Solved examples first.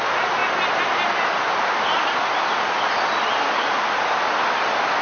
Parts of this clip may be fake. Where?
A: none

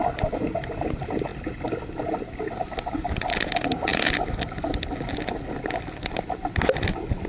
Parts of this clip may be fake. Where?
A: none

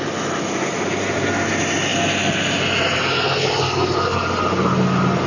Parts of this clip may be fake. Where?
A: none